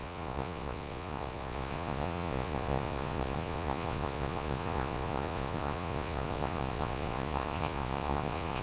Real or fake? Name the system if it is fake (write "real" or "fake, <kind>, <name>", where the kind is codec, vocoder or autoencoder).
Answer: fake, vocoder, Vocos